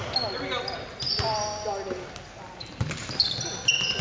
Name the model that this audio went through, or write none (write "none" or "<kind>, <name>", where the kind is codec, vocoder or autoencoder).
none